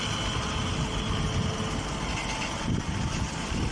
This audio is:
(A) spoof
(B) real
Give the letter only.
B